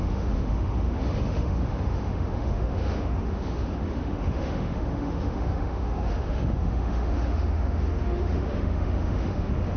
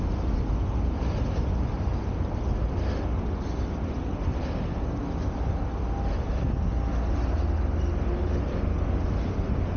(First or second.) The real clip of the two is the second